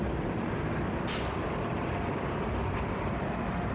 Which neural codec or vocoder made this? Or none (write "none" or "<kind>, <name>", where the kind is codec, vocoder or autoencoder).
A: vocoder, BigVGAN v2